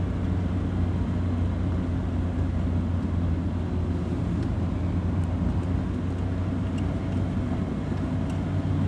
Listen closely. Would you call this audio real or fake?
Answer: real